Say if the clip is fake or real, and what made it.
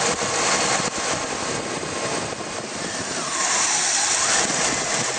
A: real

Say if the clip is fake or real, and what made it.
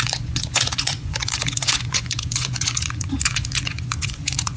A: fake, vocoder, Vocos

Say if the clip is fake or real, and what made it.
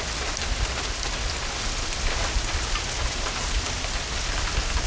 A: real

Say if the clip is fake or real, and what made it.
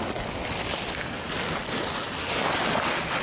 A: real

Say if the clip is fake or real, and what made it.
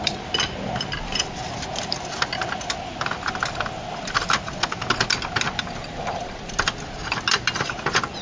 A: real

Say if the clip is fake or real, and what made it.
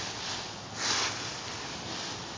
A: real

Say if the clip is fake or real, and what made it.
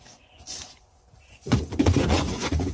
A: fake, vocoder, Vocos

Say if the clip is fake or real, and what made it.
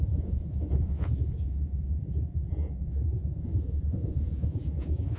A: fake, vocoder, Vocos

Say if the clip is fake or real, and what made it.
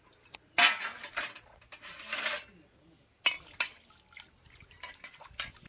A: real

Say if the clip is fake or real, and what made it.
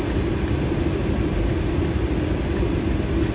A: real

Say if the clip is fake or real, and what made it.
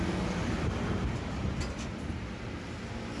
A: real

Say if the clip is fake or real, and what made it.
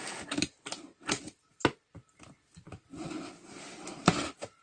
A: real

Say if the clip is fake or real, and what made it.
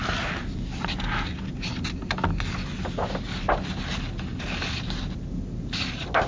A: real